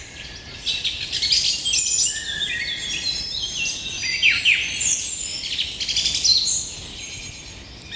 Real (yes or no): yes